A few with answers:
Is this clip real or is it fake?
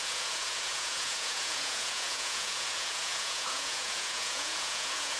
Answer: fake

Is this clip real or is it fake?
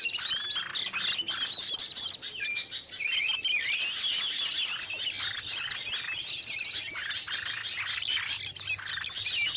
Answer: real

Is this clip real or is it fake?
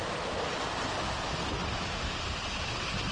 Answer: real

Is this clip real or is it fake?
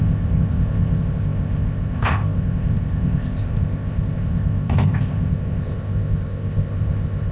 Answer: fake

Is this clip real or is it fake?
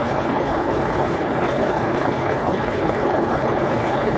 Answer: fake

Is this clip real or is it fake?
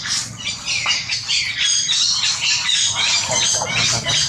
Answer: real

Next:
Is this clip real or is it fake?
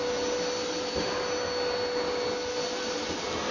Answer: real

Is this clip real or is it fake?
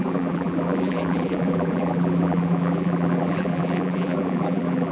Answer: fake